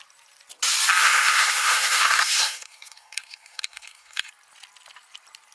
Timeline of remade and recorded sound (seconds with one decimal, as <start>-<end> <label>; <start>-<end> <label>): 0.0-1.0 recorded; 1.0-4.3 remade; 4.3-5.5 recorded